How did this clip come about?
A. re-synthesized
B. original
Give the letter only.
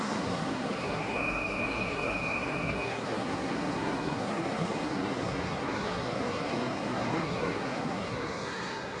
A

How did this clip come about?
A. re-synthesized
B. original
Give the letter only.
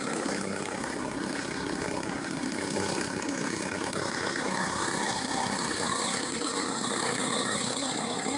A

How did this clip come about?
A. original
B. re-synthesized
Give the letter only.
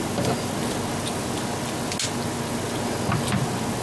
A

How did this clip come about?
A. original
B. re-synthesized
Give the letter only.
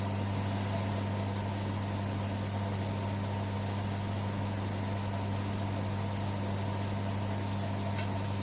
A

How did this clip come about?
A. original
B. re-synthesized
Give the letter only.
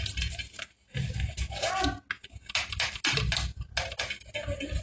A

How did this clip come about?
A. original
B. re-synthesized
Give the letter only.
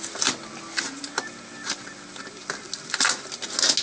A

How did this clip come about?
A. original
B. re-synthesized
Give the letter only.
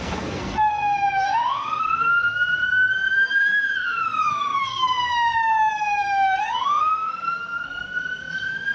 B